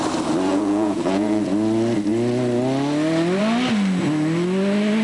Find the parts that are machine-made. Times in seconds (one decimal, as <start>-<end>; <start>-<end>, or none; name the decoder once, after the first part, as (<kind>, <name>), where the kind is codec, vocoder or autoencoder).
0.5-1.4 (vocoder, Vocos)